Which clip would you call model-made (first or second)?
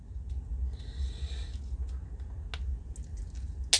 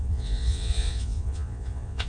second